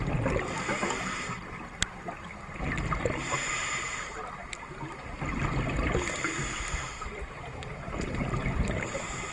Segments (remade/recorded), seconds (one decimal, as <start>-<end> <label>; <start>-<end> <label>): 0.0-7.1 recorded; 7.1-8.9 remade; 8.9-9.3 recorded